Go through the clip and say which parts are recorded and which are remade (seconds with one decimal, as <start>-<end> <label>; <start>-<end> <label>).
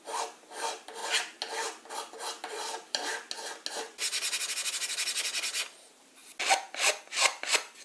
0.0-7.8 recorded